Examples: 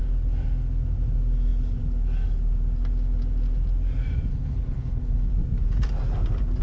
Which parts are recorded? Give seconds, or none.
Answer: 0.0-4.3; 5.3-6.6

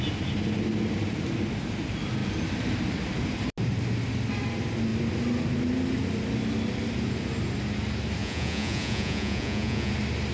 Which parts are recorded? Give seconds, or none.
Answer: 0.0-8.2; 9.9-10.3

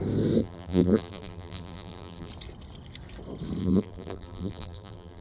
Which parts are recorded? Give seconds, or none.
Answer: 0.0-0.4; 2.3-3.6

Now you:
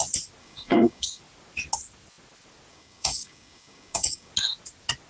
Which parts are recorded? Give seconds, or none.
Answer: 0.0-0.4; 1.2-2.7; 4.3-5.1

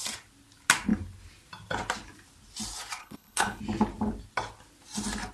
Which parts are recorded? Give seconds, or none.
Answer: 0.0-3.0; 3.6-5.3

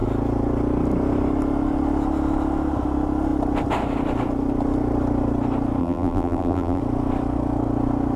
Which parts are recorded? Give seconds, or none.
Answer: 0.0-5.8; 6.8-8.2

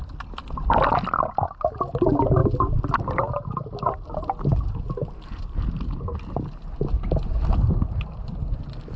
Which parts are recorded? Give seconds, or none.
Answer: 0.0-9.0